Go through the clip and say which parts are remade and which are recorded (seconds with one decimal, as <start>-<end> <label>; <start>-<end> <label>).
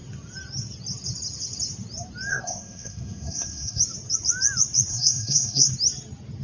0.0-2.3 recorded; 2.3-3.8 remade; 3.8-4.9 recorded; 4.9-5.7 remade; 5.7-6.4 recorded